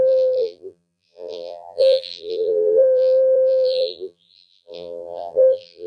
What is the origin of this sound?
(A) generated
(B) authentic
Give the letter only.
A